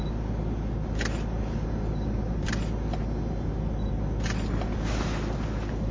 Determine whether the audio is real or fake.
real